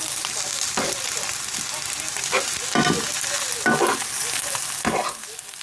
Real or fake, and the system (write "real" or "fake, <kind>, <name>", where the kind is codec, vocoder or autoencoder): real